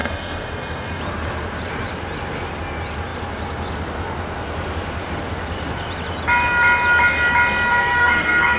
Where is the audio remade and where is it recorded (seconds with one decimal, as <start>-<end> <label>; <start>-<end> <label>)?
0.0-1.0 remade; 1.0-7.7 recorded; 7.7-8.6 remade